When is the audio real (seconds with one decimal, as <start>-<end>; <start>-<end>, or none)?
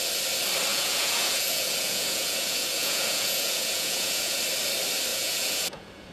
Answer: 0.0-0.7; 4.4-5.1